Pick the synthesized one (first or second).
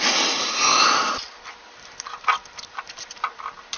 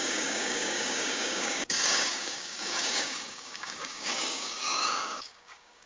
second